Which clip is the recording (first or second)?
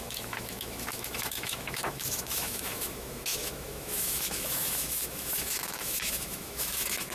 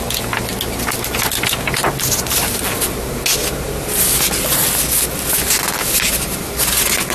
second